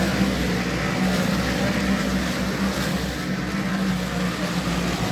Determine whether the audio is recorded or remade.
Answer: recorded